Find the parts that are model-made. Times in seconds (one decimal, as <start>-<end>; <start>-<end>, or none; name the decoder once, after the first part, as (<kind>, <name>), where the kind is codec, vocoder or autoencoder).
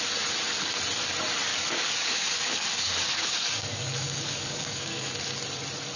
1.5-5.1 (codec, DAC)